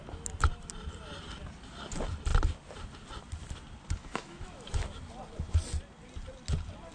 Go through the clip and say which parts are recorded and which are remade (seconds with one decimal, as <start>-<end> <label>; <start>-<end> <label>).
0.0-4.0 recorded; 4.0-5.0 remade; 5.0-6.9 recorded